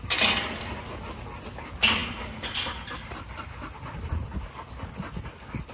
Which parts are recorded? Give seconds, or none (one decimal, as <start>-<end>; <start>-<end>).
0.0-5.7